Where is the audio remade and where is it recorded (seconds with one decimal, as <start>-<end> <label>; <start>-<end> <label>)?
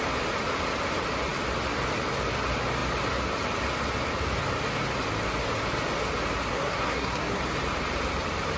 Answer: 0.0-6.5 recorded; 6.5-7.4 remade; 7.4-8.6 recorded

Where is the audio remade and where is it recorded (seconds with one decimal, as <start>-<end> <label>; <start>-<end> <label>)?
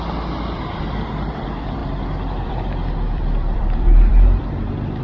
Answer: 0.0-5.0 remade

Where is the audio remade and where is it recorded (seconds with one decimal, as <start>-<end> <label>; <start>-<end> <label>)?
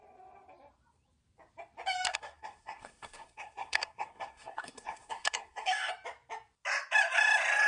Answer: 0.0-2.1 recorded; 2.1-5.9 remade; 5.9-7.7 recorded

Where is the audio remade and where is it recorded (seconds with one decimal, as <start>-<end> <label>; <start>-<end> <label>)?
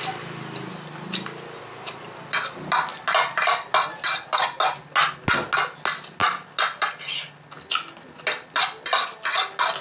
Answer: 0.0-9.8 recorded